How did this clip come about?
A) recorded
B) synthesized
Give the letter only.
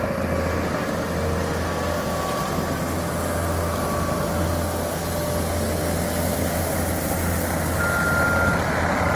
A